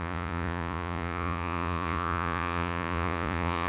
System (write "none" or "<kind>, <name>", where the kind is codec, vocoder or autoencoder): vocoder, Vocos